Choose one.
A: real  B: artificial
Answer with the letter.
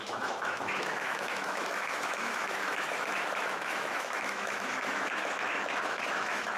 B